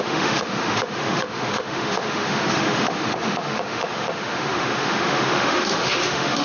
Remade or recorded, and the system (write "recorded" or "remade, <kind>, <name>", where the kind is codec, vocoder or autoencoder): remade, autoencoder, DAC-VAE